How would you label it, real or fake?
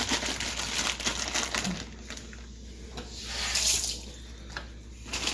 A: real